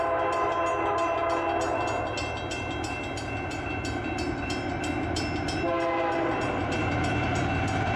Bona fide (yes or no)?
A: yes